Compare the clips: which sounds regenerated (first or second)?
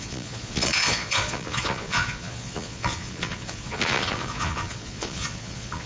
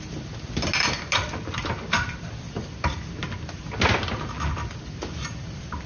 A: first